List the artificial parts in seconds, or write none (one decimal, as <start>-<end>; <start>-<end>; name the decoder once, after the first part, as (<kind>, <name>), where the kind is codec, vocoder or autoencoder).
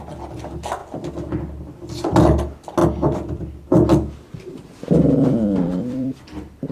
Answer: 5.7-6.2 (vocoder, BigVGAN v2)